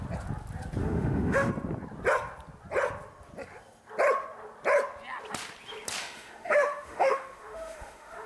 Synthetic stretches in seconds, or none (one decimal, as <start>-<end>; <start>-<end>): 0.8-1.5; 6.0-8.3